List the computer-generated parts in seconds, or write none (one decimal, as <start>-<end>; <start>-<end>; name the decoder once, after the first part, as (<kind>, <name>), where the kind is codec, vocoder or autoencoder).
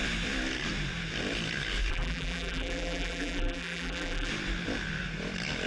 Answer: 1.9-4.3 (vocoder, BigVGAN v2)